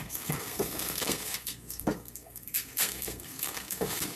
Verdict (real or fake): fake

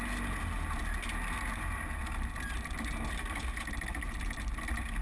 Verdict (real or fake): real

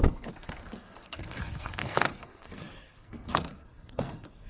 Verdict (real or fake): fake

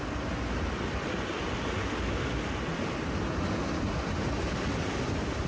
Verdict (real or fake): real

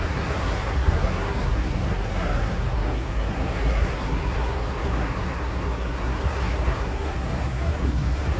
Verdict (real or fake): fake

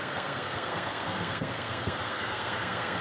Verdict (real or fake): fake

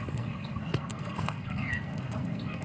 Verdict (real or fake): fake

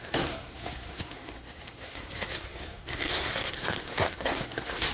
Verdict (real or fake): fake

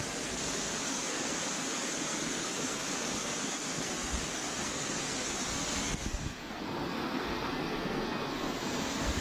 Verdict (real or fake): fake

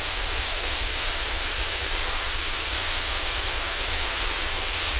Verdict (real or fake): fake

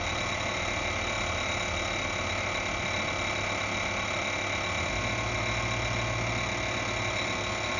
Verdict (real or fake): real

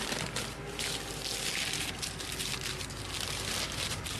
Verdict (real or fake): real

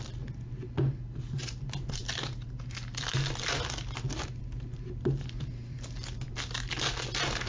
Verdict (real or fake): real